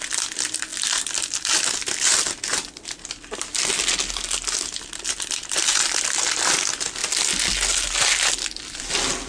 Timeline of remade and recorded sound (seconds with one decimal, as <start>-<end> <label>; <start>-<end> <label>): 0.0-9.3 recorded